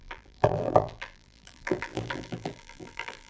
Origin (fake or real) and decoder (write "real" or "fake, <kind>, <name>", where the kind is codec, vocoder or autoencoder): fake, vocoder, BigVGAN v2